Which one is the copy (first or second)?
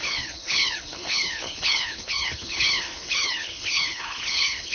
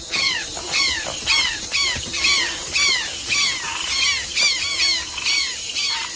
first